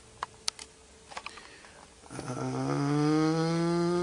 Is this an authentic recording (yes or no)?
yes